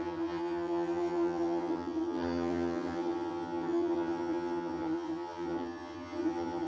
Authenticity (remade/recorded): remade